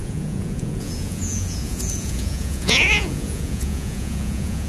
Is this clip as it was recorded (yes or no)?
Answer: no